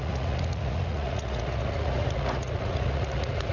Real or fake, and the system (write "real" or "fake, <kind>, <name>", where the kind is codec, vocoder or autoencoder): fake, vocoder, Vocos